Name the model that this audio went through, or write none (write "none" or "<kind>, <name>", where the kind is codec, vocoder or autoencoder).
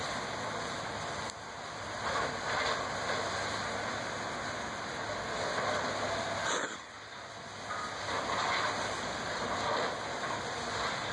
none